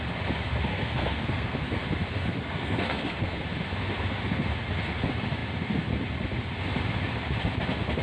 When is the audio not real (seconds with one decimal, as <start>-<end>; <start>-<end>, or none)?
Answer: 0.7-1.7; 2.3-3.4